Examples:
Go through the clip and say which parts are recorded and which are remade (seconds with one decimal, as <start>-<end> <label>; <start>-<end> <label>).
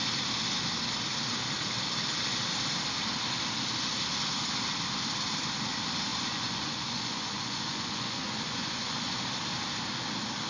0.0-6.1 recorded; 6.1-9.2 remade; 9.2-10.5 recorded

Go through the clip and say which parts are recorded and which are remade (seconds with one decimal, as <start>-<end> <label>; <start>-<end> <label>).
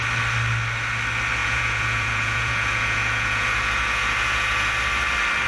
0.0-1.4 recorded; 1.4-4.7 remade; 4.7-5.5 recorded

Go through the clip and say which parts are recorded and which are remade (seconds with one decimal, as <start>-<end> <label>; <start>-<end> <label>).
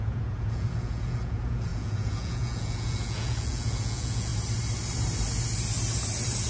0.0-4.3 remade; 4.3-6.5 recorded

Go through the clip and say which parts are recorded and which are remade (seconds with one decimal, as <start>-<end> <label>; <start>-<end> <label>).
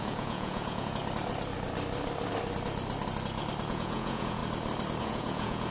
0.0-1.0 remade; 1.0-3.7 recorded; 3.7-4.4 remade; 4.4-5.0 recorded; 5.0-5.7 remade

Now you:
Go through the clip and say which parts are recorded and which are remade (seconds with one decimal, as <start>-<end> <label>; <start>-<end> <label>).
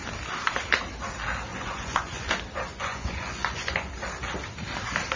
0.0-1.5 recorded; 1.5-2.3 remade; 2.3-2.7 recorded; 2.7-3.9 remade; 3.9-5.2 recorded